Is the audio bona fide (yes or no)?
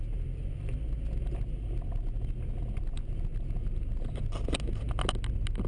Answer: yes